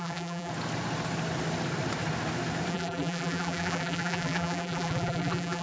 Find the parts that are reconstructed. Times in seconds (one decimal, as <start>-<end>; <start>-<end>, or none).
0.0-0.5; 2.7-5.6